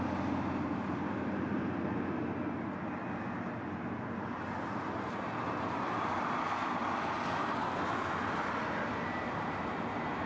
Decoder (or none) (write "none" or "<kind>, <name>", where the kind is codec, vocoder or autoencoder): none